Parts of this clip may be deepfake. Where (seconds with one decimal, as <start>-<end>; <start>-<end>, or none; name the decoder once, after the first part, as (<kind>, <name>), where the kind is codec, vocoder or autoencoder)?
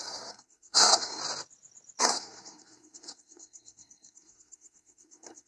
0.0-1.2 (codec, SNAC); 2.0-5.5